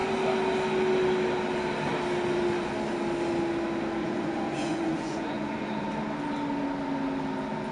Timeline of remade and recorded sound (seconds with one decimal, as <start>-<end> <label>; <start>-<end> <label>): 0.0-4.0 recorded; 4.0-5.9 remade; 5.9-7.7 recorded